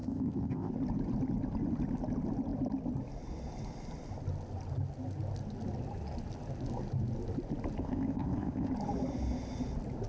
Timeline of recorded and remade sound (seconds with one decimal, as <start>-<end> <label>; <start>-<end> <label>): 0.0-0.7 remade; 0.7-7.8 recorded; 7.8-8.7 remade; 8.7-10.1 recorded